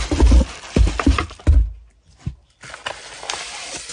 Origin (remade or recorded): recorded